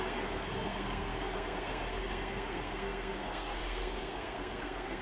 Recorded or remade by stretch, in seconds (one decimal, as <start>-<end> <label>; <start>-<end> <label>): 0.0-5.0 remade